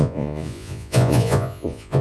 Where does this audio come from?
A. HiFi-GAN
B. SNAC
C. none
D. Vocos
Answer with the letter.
D